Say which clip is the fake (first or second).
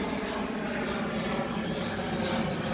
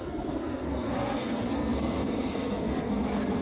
second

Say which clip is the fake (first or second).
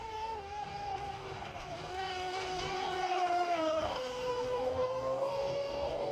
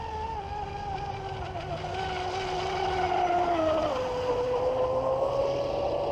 first